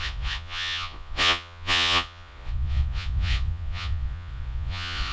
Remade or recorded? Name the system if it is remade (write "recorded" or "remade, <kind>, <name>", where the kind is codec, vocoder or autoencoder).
remade, vocoder, Vocos